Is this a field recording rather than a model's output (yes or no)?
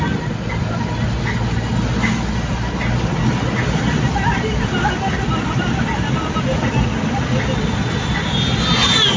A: yes